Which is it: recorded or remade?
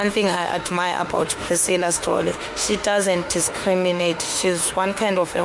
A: remade